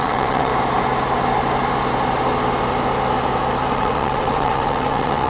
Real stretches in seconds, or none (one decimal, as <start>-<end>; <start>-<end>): 0.5-3.7